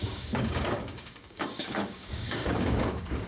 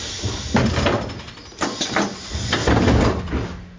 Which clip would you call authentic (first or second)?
second